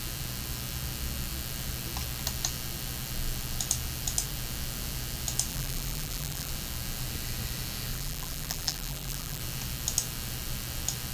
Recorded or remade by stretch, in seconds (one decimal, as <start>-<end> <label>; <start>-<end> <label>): 0.0-5.5 recorded; 5.5-6.5 remade; 6.5-7.9 recorded; 7.9-9.4 remade; 9.4-11.1 recorded